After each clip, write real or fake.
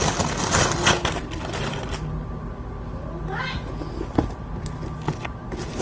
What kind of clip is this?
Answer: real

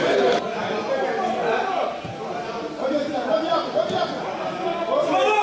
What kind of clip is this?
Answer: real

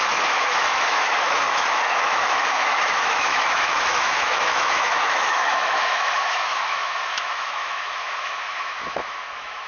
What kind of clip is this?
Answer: fake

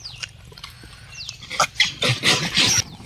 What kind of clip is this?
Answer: real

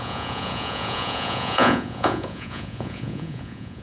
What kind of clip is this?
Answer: fake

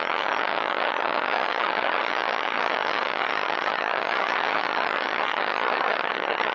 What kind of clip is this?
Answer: fake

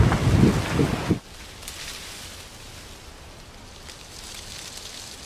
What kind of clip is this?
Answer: real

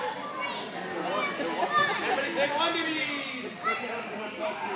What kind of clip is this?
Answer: real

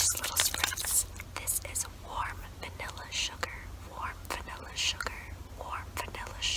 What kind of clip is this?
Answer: real